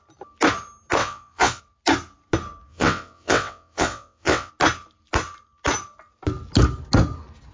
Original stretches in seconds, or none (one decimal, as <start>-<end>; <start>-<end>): 0.0-1.0; 1.6-2.7; 4.5-7.5

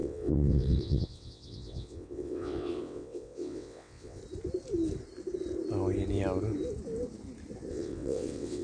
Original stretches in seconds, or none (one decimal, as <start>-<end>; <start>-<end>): 4.2-7.7

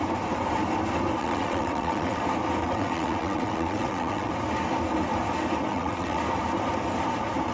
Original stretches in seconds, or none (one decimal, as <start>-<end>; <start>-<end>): 0.0-1.2; 2.2-2.6; 4.3-5.7; 6.2-7.5

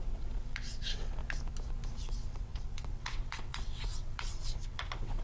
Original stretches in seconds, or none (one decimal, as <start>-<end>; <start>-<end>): 1.2-1.9

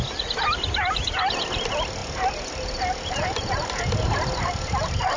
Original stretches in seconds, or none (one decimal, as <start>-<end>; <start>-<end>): 0.0-5.2